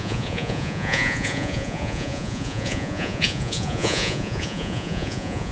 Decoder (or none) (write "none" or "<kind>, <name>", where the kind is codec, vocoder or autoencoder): vocoder, Vocos